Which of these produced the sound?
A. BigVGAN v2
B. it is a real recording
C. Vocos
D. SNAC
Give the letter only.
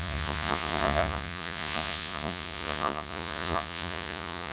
C